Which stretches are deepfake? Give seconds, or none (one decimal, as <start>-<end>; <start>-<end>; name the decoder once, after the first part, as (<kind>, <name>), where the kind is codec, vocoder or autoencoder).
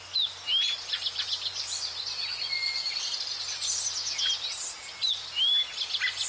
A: none